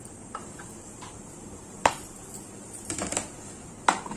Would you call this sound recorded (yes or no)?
no